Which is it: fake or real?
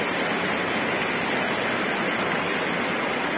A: real